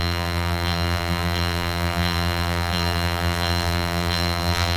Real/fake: fake